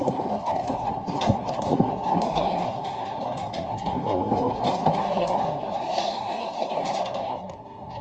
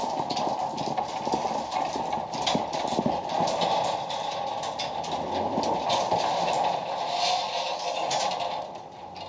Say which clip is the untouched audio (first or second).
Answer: second